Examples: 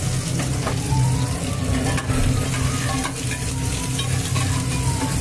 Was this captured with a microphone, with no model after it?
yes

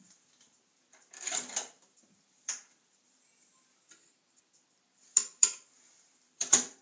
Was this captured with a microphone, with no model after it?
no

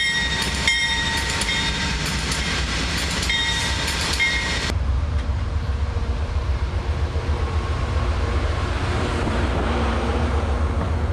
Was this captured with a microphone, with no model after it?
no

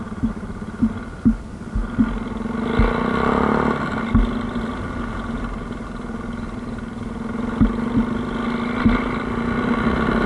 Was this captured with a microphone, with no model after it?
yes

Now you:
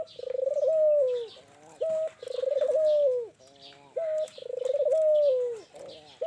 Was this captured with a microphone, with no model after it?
yes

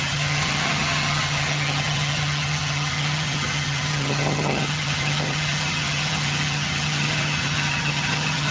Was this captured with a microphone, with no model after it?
no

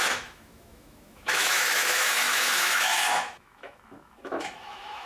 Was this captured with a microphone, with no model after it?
no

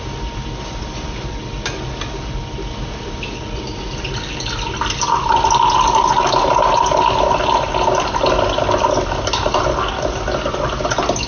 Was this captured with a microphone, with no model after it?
yes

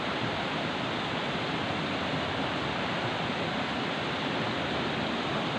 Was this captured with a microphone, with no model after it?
yes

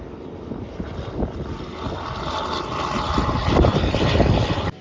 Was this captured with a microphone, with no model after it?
yes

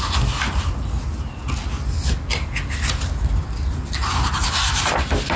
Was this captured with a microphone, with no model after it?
yes